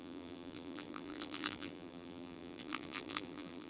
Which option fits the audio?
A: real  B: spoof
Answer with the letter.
B